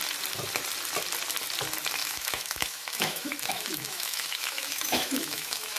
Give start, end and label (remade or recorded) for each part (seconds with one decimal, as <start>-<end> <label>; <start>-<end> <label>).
0.0-2.0 recorded; 2.0-5.8 remade